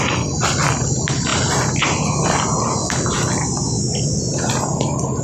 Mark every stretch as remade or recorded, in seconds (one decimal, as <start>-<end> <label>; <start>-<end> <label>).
0.0-5.2 recorded